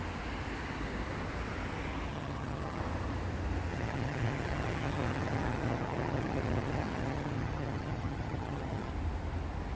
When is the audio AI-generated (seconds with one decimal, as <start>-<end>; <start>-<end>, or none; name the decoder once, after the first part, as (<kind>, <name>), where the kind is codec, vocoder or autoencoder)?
2.1-2.8 (vocoder, HiFi-GAN); 3.7-8.9